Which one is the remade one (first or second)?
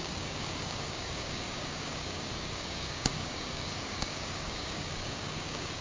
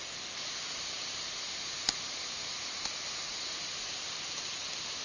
first